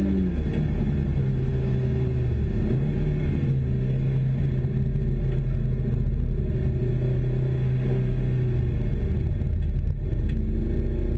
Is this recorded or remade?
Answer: recorded